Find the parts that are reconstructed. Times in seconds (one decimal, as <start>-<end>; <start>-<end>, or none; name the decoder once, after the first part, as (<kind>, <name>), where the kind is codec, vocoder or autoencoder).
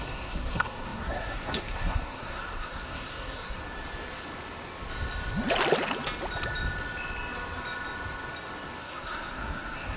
0.0-3.6 (codec, SNAC); 8.8-10.0